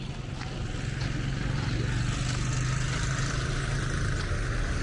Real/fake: real